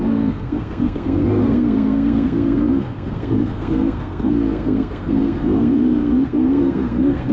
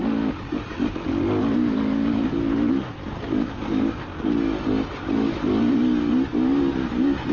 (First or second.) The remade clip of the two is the first